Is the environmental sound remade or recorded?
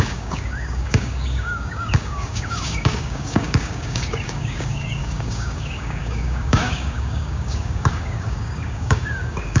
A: remade